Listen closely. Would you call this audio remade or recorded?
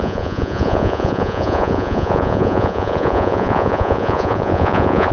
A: remade